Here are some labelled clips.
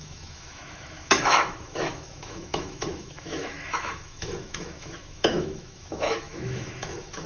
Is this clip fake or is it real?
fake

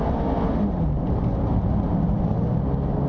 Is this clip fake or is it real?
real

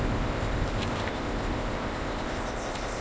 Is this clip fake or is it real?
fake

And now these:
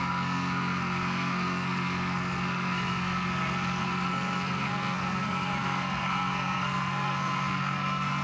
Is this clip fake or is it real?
fake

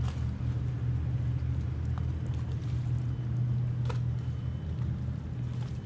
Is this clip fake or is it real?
real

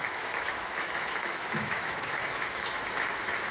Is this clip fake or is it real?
fake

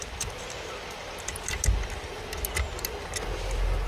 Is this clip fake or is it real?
real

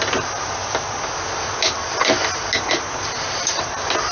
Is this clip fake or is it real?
real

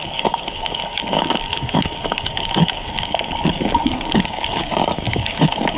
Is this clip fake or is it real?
fake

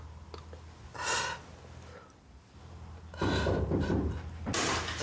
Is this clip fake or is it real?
real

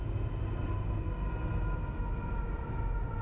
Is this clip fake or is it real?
real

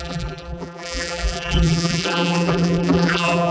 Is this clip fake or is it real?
fake